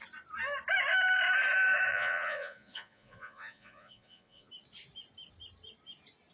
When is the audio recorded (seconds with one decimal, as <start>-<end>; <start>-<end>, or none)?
0.0-1.9; 4.5-6.3